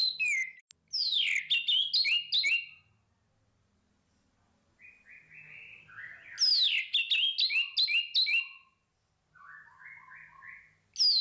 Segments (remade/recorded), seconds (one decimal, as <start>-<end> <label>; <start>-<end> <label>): 0.0-11.2 recorded